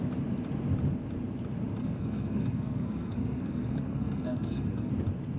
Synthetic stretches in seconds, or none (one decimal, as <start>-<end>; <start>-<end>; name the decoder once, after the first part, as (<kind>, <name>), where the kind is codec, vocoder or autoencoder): 1.8-4.9 (codec, SNAC)